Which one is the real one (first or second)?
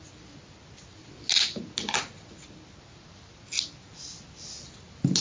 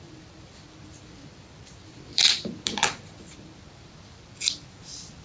first